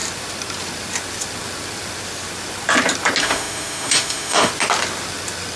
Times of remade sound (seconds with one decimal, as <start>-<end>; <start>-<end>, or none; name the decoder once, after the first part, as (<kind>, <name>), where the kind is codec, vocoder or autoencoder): 3.2-4.5 (autoencoder, DAC-VAE)